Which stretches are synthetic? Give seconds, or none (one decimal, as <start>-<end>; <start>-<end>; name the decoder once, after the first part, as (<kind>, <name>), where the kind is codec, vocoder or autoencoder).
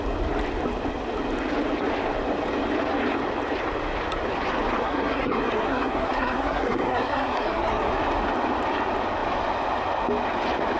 4.8-7.9 (codec, SNAC)